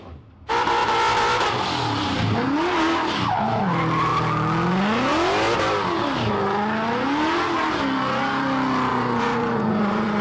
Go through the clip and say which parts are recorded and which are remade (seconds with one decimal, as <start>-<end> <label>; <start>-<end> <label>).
0.0-8.9 recorded; 8.9-10.2 remade